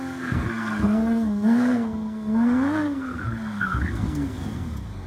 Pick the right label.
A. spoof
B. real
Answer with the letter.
A